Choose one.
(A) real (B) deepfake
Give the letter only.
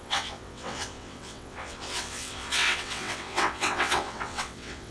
B